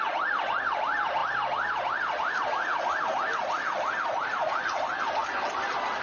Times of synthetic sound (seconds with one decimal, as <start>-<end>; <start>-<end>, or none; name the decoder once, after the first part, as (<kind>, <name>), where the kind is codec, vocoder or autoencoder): none